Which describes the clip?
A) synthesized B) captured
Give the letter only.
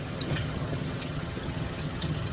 A